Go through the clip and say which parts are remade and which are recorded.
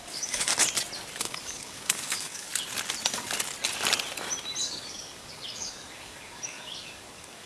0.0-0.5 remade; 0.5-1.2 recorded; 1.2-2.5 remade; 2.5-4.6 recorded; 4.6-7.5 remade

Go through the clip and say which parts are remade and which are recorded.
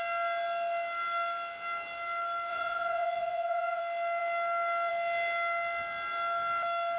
0.0-2.5 recorded; 2.5-3.8 remade; 3.8-7.0 recorded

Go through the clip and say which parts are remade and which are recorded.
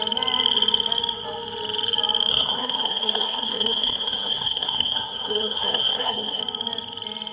0.0-2.3 recorded; 2.3-6.4 remade; 6.4-7.3 recorded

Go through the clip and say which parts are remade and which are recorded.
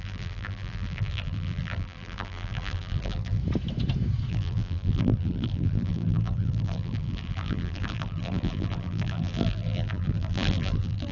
0.0-3.4 remade; 3.4-4.3 recorded; 4.3-11.1 remade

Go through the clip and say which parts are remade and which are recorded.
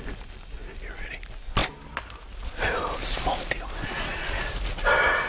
0.0-1.6 recorded; 1.6-3.5 remade; 3.5-4.1 recorded; 4.1-4.7 remade; 4.7-5.3 recorded